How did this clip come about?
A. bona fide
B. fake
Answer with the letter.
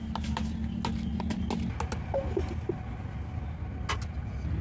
A